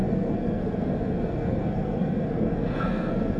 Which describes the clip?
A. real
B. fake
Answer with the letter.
B